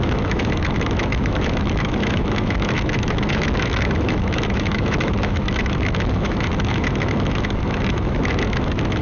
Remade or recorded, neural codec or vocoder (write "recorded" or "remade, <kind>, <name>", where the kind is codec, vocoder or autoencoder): remade, autoencoder, DAC-VAE